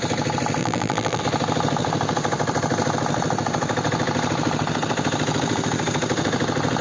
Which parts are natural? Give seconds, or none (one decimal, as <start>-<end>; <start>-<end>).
0.0-0.6; 1.2-6.8